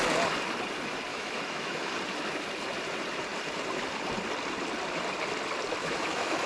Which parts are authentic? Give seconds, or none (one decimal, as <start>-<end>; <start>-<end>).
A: 0.0-1.1; 1.9-5.8